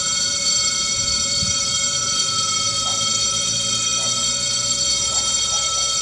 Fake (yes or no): yes